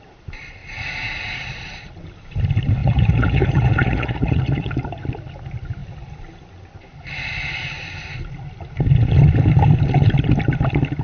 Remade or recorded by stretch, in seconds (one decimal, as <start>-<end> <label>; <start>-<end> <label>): 0.0-2.8 recorded; 2.8-4.7 remade; 4.7-11.0 recorded